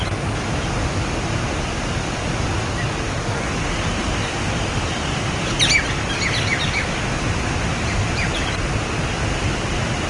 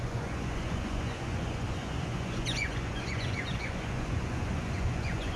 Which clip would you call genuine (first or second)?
first